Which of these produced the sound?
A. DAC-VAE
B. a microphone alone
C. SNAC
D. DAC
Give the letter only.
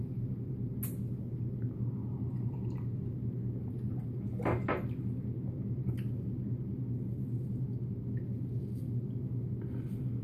B